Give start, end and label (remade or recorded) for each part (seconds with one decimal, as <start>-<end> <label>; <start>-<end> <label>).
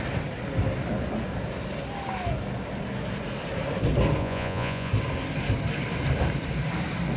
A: 0.0-4.2 recorded; 4.2-4.9 remade; 4.9-7.2 recorded